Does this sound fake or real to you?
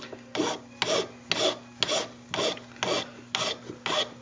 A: real